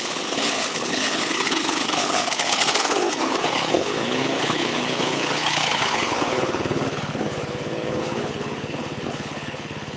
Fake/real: fake